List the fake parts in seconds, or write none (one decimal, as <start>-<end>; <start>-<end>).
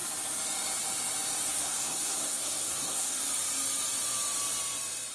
1.5-3.2